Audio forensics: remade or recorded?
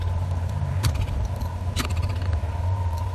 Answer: remade